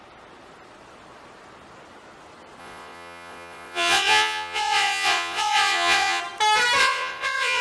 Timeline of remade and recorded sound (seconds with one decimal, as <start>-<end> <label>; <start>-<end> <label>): 0.0-2.6 recorded; 2.6-6.2 remade; 6.2-6.8 recorded; 6.8-7.6 remade